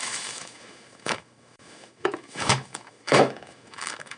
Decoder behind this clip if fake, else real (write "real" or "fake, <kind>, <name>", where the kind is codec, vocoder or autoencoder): fake, autoencoder, DAC-VAE